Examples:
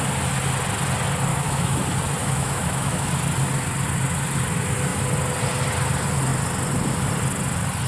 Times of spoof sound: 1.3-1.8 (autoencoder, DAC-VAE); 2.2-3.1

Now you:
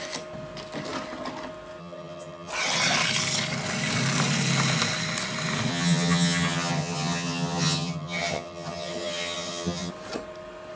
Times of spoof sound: 1.8-2.5 (vocoder, HiFi-GAN); 5.7-9.9

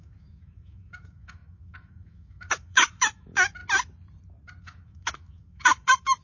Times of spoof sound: 0.0-3.6 (autoencoder, DAC-VAE); 4.6-6.2